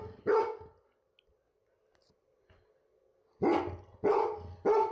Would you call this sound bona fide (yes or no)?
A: yes